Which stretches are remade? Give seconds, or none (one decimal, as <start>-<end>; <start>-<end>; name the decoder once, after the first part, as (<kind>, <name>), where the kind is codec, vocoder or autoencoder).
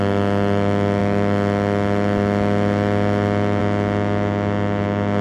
none